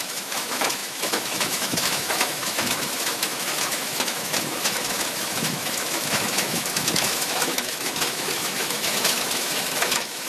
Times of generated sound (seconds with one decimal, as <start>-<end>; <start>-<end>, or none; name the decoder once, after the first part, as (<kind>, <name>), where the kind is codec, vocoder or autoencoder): 0.0-10.3 (autoencoder, DAC-VAE)